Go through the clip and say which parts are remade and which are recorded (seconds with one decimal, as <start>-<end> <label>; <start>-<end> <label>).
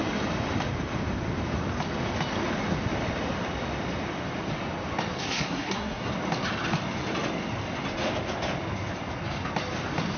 0.0-5.2 recorded; 5.2-6.1 remade; 6.1-10.2 recorded